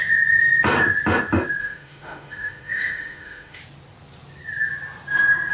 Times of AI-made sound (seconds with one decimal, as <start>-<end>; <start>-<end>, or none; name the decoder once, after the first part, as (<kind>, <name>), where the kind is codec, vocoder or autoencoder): 1.6-3.6 (autoencoder, DAC-VAE)